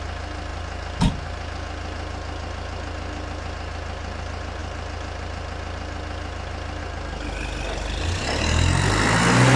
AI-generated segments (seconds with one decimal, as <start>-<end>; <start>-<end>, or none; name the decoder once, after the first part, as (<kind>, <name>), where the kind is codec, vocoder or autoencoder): none

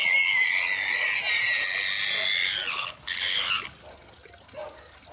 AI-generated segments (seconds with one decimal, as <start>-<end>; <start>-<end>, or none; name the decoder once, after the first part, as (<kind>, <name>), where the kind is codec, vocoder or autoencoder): 2.7-3.5 (codec, HILCodec)

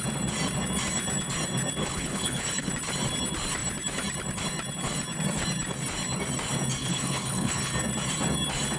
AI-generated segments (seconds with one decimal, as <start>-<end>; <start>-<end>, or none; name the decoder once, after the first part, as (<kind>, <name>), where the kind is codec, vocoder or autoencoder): 1.8-2.7 (codec, HILCodec); 6.8-7.7

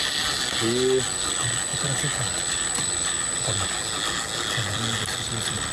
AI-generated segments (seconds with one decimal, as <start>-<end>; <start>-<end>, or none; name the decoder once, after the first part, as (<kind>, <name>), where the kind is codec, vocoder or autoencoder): none

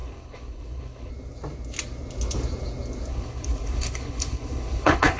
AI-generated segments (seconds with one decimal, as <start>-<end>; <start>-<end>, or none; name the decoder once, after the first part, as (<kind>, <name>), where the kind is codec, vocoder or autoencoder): 0.0-1.1 (codec, HILCodec); 3.1-5.2

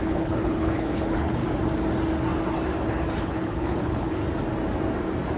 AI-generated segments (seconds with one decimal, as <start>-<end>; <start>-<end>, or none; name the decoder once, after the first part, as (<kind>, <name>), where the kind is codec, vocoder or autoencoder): 0.0-1.4 (codec, HILCodec); 3.2-4.2